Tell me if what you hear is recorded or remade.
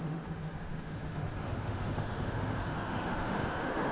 remade